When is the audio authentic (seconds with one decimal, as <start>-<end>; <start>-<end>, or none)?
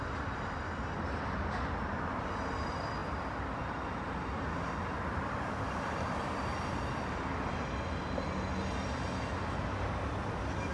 0.0-10.7